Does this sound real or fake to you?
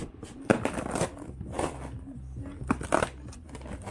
real